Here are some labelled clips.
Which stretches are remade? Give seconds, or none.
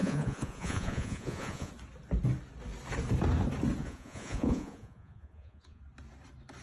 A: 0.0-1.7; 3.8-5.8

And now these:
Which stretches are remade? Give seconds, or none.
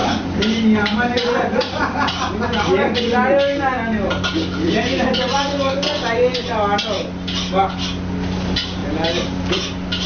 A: 0.0-3.0; 8.8-9.4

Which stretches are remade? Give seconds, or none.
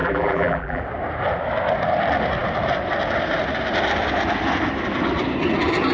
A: 0.0-0.8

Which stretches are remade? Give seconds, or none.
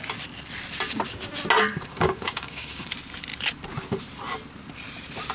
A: 1.7-2.9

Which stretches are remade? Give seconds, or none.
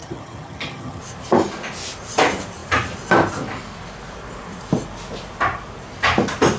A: 0.0-1.0